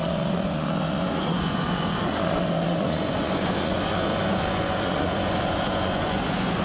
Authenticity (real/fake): fake